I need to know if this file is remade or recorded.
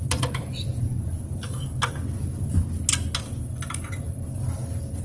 recorded